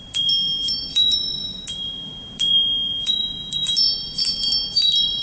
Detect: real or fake fake